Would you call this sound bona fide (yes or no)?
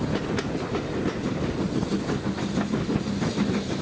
yes